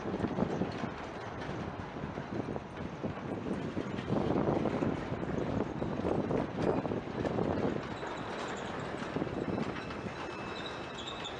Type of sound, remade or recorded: recorded